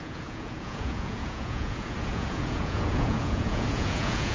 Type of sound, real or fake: fake